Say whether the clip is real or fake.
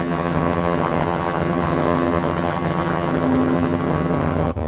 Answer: fake